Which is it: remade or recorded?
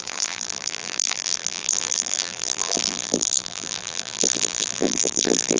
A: remade